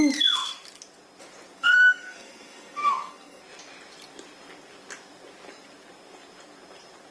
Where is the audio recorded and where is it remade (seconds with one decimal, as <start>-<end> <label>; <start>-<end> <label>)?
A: 0.0-1.6 recorded; 1.6-3.4 remade; 3.4-7.1 recorded